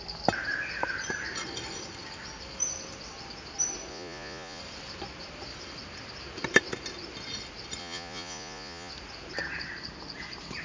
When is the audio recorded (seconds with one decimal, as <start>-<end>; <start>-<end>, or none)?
0.0-3.9; 4.6-7.8; 8.9-10.6